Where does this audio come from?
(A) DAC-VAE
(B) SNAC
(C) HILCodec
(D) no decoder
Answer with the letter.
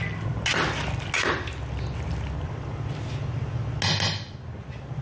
D